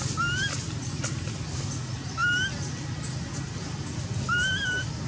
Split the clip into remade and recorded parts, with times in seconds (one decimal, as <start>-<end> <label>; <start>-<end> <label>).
0.0-5.1 recorded

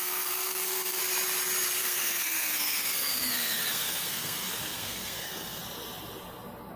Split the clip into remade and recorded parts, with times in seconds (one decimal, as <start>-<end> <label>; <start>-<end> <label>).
0.0-1.0 remade; 1.0-1.8 recorded; 1.8-5.6 remade; 5.6-6.8 recorded

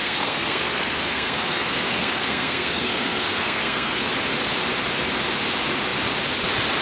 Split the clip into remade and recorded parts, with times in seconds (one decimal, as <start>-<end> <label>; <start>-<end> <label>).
0.0-4.1 remade; 4.1-6.8 recorded

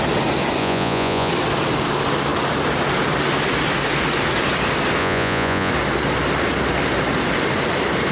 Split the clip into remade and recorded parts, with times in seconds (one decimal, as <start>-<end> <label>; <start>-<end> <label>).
0.0-0.6 recorded; 0.6-1.3 remade; 1.3-5.0 recorded; 5.0-5.7 remade; 5.7-8.1 recorded